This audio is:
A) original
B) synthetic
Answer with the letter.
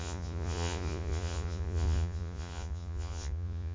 B